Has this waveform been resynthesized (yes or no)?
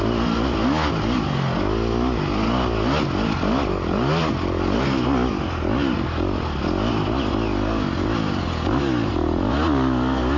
no